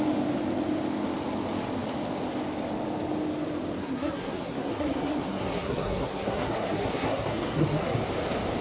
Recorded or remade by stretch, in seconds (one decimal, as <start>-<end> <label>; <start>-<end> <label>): 0.0-3.8 recorded; 3.8-8.0 remade; 8.0-8.6 recorded